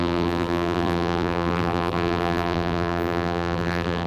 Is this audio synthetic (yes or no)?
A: yes